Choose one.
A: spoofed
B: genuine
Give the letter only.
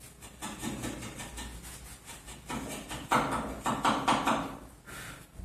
B